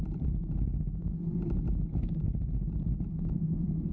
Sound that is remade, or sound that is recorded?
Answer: recorded